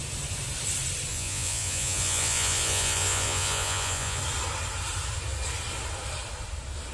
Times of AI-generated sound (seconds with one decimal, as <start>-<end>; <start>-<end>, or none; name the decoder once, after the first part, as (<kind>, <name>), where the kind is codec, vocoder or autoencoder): 1.1-4.2 (vocoder, Vocos)